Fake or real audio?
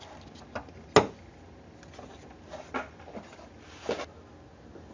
real